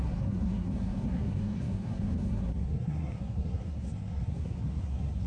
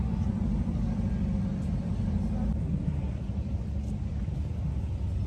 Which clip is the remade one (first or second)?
first